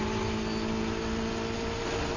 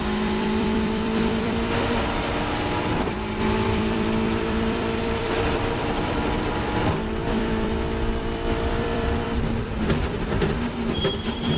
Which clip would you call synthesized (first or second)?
second